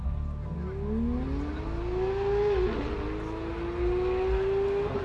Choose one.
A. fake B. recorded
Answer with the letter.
B